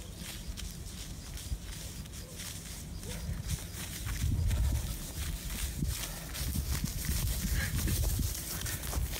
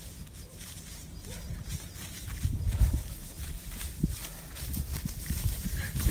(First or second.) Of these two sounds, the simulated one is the second